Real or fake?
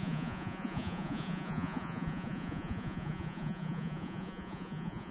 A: fake